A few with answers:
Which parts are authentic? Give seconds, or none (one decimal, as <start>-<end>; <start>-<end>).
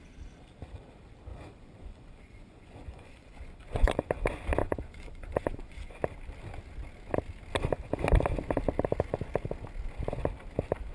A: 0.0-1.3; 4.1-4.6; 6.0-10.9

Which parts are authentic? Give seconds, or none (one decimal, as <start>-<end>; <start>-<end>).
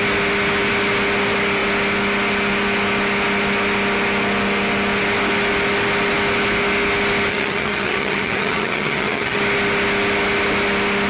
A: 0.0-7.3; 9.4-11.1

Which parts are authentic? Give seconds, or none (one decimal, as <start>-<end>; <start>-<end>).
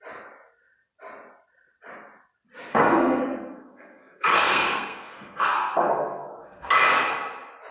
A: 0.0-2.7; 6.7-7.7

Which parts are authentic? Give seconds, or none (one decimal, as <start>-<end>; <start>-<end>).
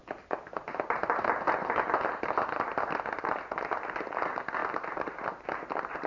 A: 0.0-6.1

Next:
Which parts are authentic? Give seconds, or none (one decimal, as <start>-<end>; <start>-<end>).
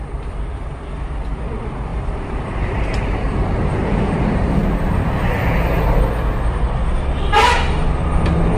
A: 0.0-1.9; 6.0-8.6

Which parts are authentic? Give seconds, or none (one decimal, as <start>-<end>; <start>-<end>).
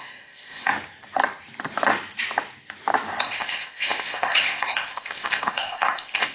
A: 0.7-3.2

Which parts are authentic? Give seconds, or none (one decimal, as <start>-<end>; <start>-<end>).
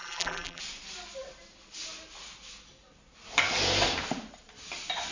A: 0.6-5.1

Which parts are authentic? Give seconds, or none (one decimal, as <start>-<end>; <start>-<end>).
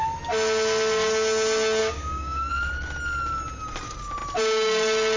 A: 0.0-1.8; 2.5-5.2